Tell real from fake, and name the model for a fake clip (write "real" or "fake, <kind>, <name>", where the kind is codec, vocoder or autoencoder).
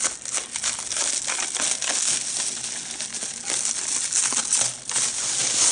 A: real